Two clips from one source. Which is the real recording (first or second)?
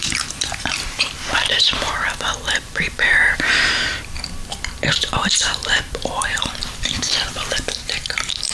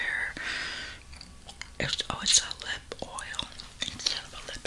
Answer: second